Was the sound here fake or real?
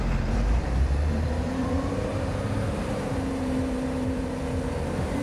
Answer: fake